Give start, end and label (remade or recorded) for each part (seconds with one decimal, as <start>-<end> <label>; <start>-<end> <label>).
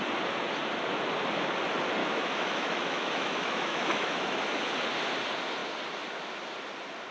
0.0-2.0 recorded; 2.0-4.6 remade; 4.6-7.1 recorded